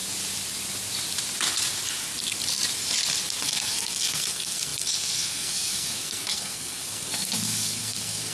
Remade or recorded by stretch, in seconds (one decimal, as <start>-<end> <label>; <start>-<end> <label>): 0.0-3.4 recorded; 3.4-8.3 remade